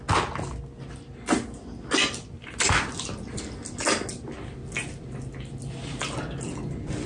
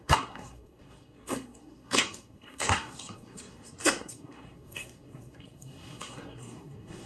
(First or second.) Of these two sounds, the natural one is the first